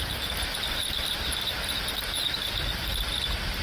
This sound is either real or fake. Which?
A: real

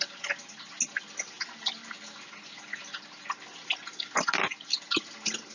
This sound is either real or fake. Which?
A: real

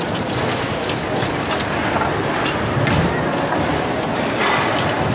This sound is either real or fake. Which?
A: real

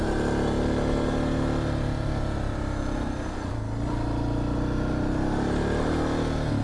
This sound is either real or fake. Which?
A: real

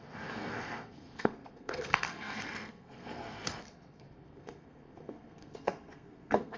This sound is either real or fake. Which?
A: fake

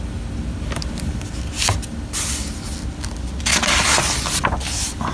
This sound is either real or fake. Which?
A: real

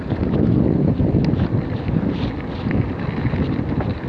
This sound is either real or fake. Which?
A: real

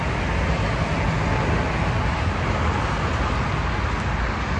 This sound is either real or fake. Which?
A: real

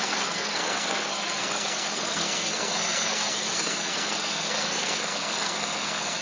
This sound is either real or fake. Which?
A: fake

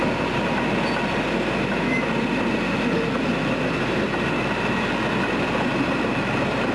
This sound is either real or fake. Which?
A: real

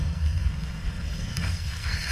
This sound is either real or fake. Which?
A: fake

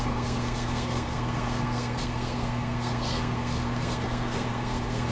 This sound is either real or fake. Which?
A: fake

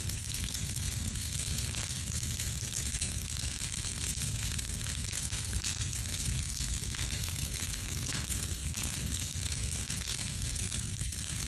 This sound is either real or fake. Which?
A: fake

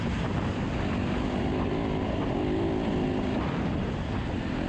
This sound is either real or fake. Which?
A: real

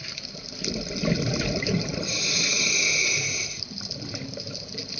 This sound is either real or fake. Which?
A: real